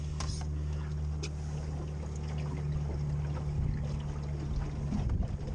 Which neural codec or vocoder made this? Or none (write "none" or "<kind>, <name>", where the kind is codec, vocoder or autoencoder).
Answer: none